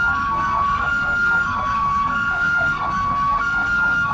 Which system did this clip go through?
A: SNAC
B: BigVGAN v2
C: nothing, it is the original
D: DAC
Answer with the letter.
A